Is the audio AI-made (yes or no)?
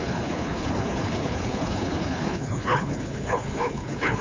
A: yes